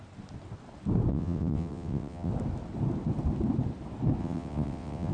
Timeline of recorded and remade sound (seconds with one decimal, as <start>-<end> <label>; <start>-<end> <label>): 0.0-1.1 recorded; 1.1-2.3 remade; 2.3-4.2 recorded; 4.2-5.1 remade